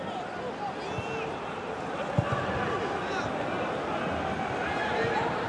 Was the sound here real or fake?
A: real